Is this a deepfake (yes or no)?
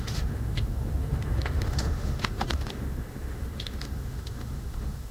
yes